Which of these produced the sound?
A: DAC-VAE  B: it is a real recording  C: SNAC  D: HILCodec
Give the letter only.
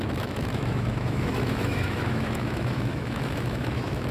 A